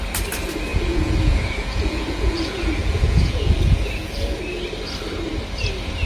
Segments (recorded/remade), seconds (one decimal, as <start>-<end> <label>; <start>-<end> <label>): 0.0-0.7 recorded; 0.7-4.4 remade; 4.4-6.1 recorded